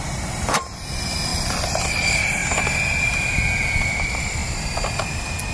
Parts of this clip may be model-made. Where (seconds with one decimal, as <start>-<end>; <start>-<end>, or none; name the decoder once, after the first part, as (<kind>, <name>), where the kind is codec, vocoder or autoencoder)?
0.0-1.3 (vocoder, BigVGAN v2); 1.9-2.4; 3.0-4.4; 5.1-5.5